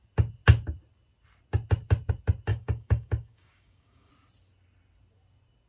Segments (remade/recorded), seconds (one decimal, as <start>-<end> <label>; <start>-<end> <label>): 0.0-2.5 recorded; 2.5-4.1 remade; 4.1-5.7 recorded

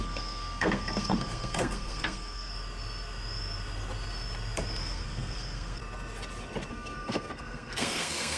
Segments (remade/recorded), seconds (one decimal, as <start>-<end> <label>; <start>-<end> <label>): 0.0-2.5 remade; 2.5-4.8 recorded; 4.8-5.8 remade; 5.8-6.7 recorded; 6.7-8.4 remade

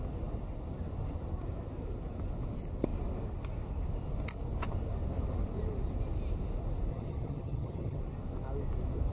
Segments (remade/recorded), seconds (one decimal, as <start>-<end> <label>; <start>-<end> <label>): 0.0-6.9 recorded; 6.9-8.0 remade; 8.0-9.1 recorded

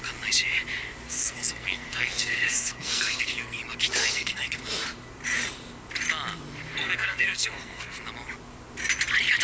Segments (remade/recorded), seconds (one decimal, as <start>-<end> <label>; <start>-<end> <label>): 0.0-1.1 recorded; 1.1-3.6 remade; 3.6-4.0 recorded; 4.0-4.6 remade; 4.6-6.8 recorded; 6.8-8.0 remade; 8.0-9.4 recorded